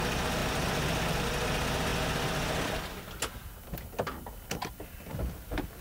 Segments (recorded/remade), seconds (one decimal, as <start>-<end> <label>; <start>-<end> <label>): 0.0-5.8 recorded